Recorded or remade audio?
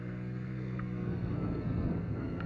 remade